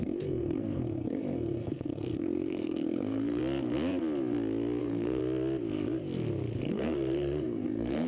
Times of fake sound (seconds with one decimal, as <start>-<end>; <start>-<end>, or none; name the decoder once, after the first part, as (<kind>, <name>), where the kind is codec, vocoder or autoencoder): 0.0-3.4 (codec, SNAC); 4.8-5.2; 6.7-8.1